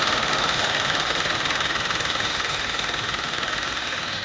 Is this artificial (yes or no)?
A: yes